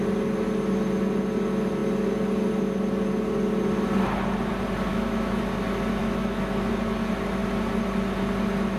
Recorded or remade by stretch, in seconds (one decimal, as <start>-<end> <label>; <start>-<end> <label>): 0.0-4.9 recorded; 4.9-5.4 remade; 5.4-6.0 recorded; 6.0-6.7 remade; 6.7-8.8 recorded